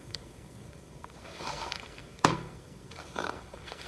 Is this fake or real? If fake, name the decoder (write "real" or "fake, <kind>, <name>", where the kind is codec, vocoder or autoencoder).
fake, codec, SNAC